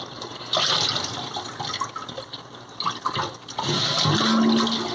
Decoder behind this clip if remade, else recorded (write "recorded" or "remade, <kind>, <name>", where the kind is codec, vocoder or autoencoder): recorded